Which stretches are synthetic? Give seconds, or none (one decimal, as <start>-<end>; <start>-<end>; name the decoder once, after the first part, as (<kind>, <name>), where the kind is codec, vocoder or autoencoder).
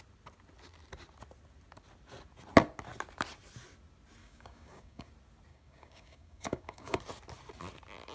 4.2-5.1 (codec, DAC); 5.5-7.0